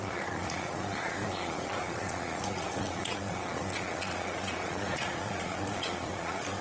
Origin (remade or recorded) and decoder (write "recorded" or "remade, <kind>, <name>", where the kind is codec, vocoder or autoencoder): remade, vocoder, Vocos